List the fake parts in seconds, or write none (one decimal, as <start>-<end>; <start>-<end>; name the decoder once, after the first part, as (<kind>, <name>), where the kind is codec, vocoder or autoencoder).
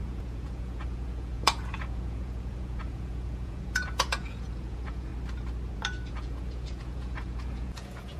0.0-5.1 (vocoder, Vocos); 6.1-8.2